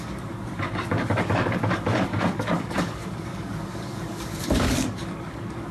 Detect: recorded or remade remade